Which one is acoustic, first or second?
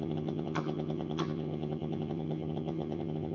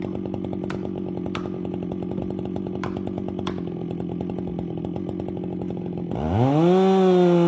second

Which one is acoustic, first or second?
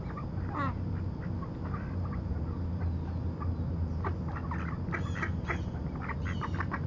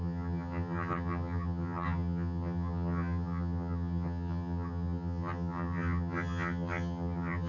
first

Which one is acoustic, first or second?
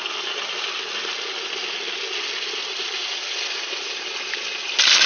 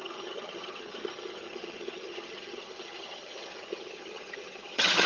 first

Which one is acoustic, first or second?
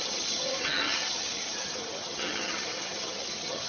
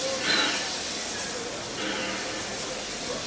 second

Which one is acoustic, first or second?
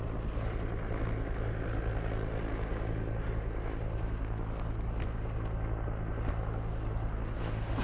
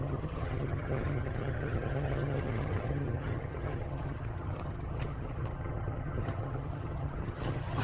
first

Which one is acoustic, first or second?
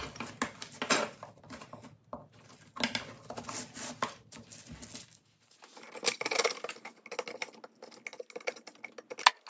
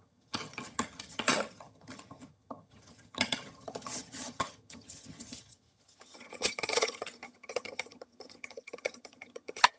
first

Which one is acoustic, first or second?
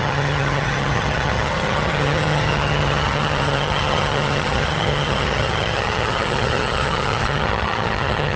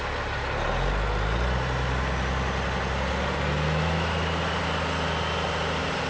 second